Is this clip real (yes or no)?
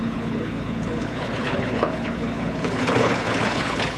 no